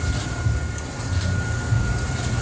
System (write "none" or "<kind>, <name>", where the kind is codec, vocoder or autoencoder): vocoder, BigVGAN v2